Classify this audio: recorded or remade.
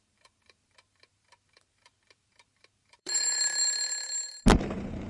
remade